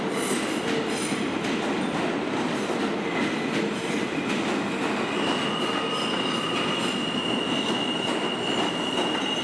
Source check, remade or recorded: recorded